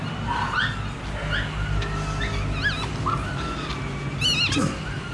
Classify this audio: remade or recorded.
recorded